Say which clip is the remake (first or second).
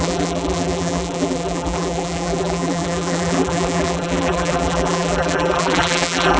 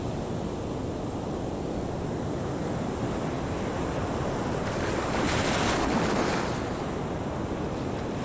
first